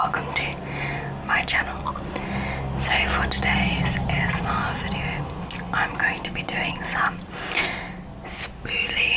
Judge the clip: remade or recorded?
recorded